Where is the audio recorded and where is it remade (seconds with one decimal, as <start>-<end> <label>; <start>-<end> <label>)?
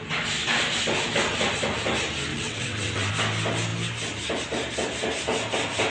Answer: 0.0-2.3 recorded; 2.3-3.1 remade; 3.1-5.9 recorded